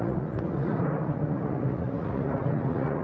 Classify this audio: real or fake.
fake